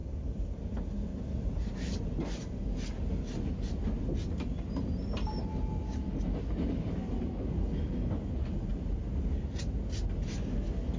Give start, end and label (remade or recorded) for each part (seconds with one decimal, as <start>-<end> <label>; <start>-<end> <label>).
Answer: 0.0-11.0 recorded